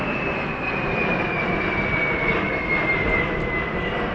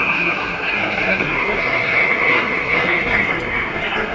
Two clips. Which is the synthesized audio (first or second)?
second